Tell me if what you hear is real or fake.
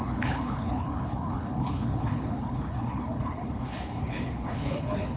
fake